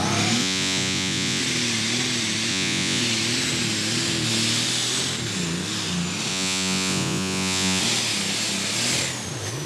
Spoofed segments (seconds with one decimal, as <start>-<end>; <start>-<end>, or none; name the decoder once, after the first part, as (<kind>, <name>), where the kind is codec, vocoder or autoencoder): 0.4-1.4 (vocoder, Vocos); 2.5-3.0; 6.3-7.8